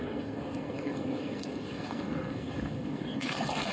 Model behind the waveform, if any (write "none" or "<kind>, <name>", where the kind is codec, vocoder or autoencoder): codec, SNAC